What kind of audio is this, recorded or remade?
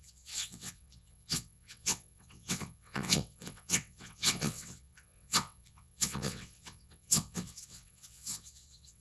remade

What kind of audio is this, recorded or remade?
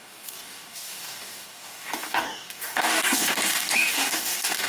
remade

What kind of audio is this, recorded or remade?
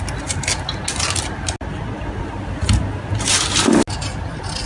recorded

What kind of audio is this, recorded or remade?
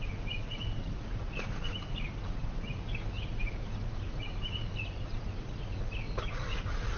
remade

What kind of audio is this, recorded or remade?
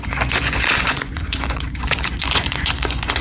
remade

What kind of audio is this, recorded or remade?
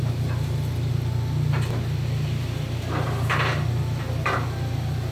recorded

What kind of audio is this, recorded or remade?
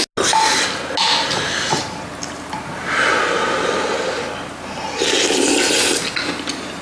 recorded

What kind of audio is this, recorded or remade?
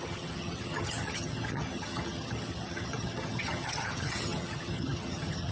remade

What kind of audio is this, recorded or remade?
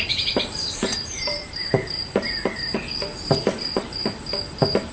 remade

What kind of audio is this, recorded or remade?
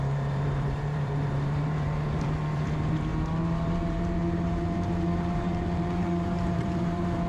remade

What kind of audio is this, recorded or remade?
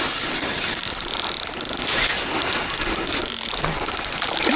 recorded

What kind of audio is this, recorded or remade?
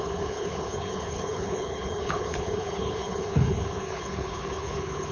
remade